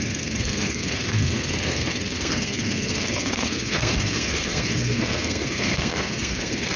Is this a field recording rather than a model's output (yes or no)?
no